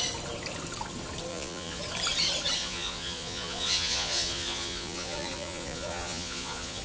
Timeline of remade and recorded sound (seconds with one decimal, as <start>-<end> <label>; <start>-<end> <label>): 0.0-1.3 recorded; 1.3-1.8 remade; 1.8-2.6 recorded; 2.6-6.8 remade